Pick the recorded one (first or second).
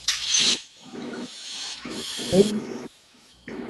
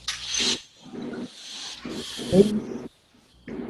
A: second